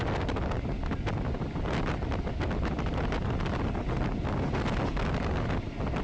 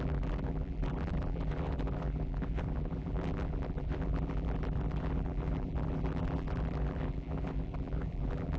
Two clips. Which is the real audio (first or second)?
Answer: first